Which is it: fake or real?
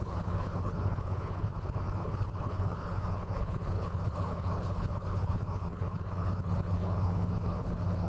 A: fake